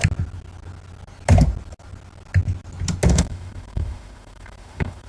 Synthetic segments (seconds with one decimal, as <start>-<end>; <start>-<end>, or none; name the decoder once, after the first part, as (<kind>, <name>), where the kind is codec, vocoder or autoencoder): 3.1-5.1 (autoencoder, DAC-VAE)